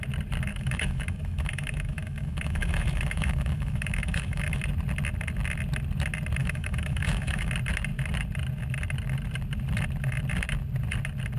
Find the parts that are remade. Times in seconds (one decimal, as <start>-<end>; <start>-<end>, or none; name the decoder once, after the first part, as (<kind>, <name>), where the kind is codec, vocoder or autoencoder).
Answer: 0.5-4.6 (autoencoder, DAC-VAE); 6.4-7.5